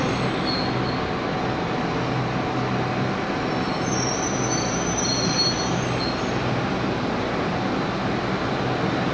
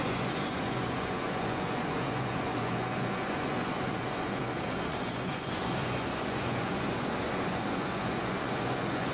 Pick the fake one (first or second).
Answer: second